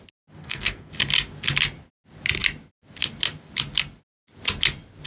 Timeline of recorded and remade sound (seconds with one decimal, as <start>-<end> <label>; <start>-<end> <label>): 0.0-0.4 recorded; 0.4-0.9 remade; 0.9-5.1 recorded